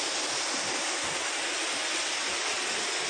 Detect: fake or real real